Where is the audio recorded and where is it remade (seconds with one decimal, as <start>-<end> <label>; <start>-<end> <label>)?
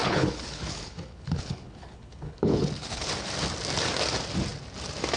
0.0-3.1 remade; 3.1-5.2 recorded